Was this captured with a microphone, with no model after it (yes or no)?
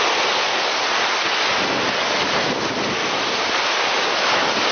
yes